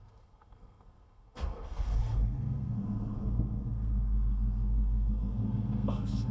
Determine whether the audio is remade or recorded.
remade